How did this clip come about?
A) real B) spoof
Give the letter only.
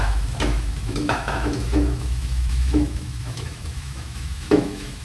B